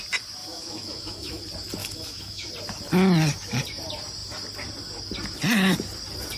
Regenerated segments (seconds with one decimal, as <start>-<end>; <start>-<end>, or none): 0.4-1.4; 1.8-2.5